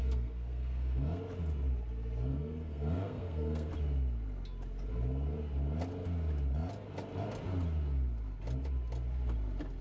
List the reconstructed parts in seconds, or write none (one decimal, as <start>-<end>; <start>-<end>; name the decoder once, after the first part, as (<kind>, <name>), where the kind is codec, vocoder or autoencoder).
0.0-1.2 (codec, SNAC); 2.3-3.7

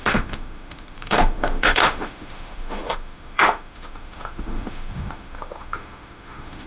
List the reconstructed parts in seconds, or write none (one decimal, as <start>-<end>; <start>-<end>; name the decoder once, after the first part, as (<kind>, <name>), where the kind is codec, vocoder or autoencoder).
0.0-6.7 (autoencoder, DAC-VAE)

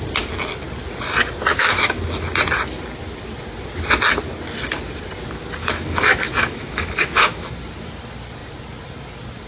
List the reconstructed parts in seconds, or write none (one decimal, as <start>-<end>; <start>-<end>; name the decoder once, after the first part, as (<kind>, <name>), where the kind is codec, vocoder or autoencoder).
1.5-2.0 (autoencoder, DAC-VAE); 5.6-7.5